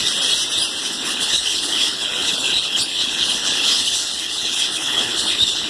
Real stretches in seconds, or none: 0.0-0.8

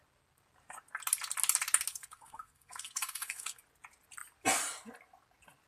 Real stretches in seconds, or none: 0.0-1.9; 3.6-5.7

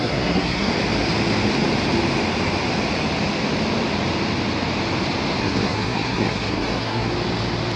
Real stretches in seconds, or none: 0.7-5.4; 7.1-7.8

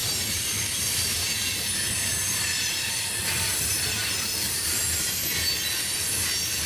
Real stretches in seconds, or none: 1.7-2.2; 4.8-6.7

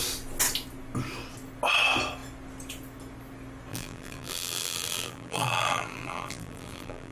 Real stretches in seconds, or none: 0.0-3.7